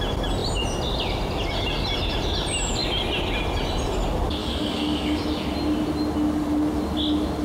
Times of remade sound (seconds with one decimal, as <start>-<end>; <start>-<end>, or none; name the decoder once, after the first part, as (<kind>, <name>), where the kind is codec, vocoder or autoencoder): 4.4-5.2 (codec, DAC)